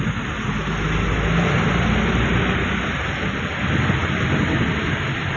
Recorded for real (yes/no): yes